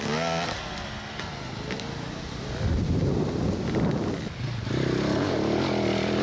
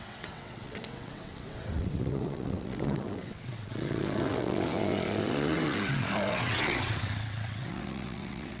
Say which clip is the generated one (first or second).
second